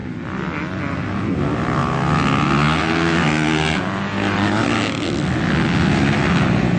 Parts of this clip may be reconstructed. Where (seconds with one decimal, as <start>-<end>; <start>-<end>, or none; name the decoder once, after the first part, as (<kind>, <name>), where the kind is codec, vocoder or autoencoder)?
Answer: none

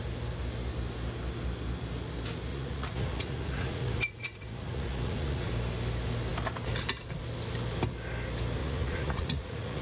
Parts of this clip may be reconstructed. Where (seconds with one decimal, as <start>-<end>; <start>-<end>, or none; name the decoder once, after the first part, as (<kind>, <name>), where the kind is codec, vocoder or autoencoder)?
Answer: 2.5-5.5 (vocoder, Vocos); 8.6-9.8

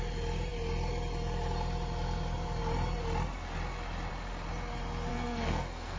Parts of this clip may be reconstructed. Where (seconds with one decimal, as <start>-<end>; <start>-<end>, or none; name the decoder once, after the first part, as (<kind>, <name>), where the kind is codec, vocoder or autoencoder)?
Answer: 5.1-6.0 (codec, SNAC)

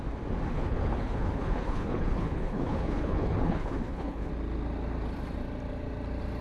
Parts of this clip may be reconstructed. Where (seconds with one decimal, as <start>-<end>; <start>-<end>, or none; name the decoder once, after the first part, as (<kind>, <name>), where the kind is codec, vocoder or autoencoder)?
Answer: 0.5-4.3 (codec, HILCodec)

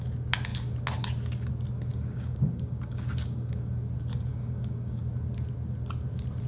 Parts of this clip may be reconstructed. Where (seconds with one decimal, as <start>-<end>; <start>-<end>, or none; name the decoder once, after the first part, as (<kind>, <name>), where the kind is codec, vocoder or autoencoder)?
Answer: 1.9-3.8 (codec, DAC); 4.3-5.0

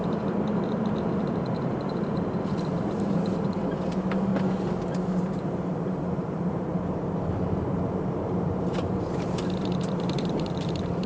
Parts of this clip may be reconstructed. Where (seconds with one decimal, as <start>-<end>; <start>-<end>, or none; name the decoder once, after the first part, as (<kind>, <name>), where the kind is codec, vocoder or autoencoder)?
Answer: 0.0-4.3 (vocoder, BigVGAN v2); 5.2-11.1